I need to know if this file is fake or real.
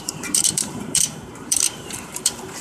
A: fake